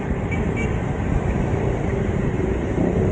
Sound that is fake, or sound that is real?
real